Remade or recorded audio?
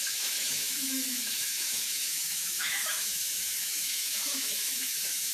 remade